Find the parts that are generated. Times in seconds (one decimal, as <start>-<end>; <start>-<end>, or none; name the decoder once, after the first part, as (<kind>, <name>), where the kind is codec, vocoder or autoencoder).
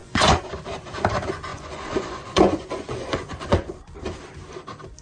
0.0-0.5 (vocoder, Vocos); 1.5-3.7